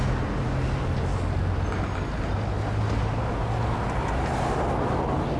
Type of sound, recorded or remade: recorded